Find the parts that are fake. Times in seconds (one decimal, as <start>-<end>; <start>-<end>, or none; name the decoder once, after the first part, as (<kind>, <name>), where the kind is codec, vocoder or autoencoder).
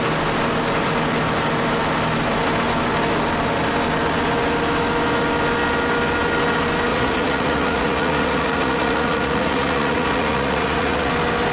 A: 6.9-11.1 (vocoder, Vocos)